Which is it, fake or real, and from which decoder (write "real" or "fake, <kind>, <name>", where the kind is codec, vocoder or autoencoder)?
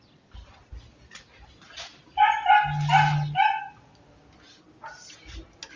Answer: real